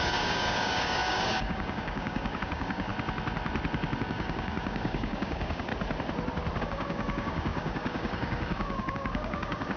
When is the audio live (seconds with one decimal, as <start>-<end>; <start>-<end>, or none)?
2.9-4.0; 5.7-6.6